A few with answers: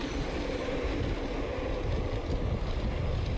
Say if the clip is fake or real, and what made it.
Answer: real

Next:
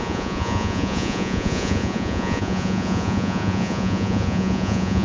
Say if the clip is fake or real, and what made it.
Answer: fake, vocoder, Vocos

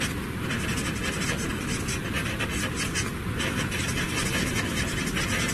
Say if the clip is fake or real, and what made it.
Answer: real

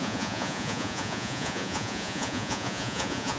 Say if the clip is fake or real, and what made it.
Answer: fake, vocoder, Vocos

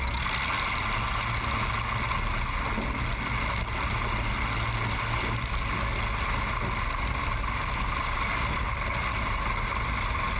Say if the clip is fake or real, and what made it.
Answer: real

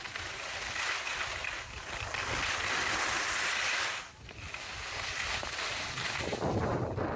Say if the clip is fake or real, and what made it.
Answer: real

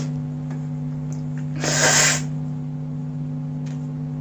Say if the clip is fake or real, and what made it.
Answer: real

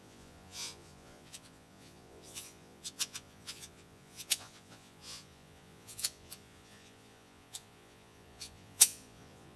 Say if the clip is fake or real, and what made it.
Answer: fake, vocoder, Vocos